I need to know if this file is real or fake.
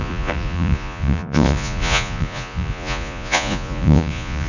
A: fake